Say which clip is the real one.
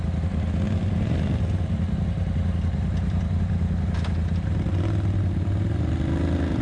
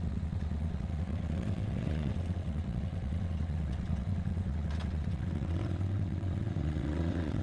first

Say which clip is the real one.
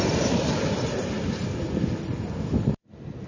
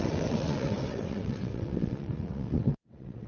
first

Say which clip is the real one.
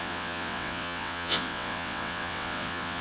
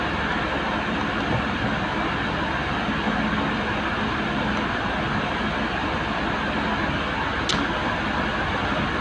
second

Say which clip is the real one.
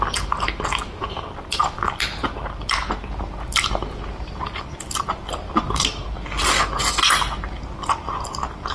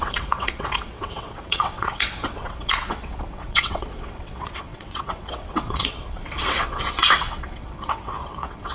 first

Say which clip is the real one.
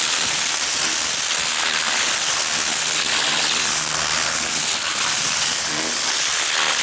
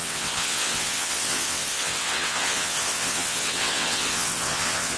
first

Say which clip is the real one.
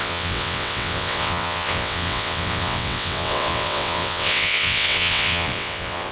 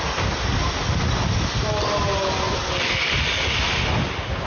second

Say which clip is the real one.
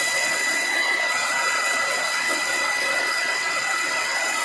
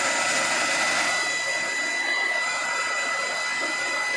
second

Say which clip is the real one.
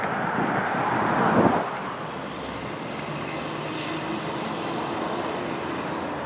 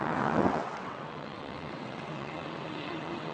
first